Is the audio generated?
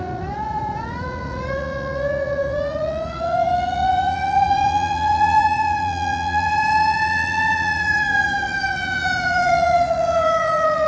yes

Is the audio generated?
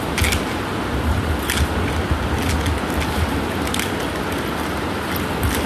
no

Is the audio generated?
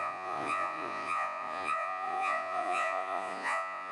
yes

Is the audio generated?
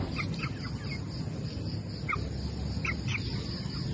no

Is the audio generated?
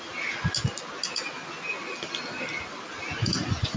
no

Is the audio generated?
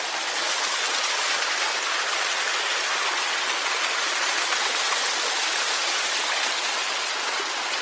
no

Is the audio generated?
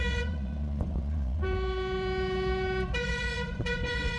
yes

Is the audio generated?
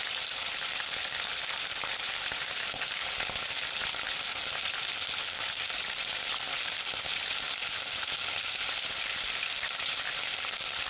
no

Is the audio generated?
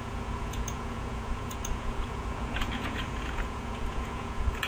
yes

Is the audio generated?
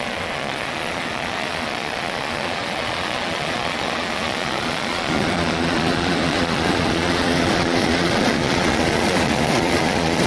yes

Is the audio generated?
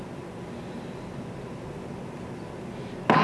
no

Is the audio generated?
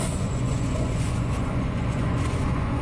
yes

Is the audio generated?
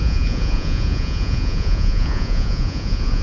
yes